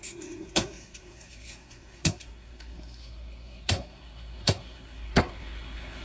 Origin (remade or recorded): remade